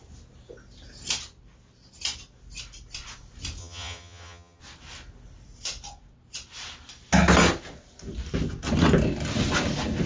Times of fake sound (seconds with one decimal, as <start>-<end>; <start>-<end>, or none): 3.6-4.6